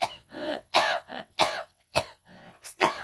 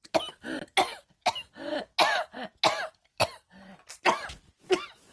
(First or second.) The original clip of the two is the second